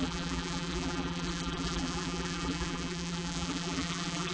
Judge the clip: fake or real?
fake